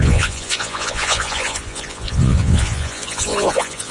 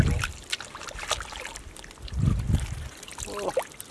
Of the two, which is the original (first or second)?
second